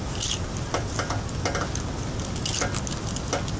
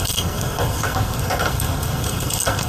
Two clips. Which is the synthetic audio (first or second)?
second